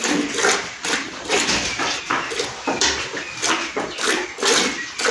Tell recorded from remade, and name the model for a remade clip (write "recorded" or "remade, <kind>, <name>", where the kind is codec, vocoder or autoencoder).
recorded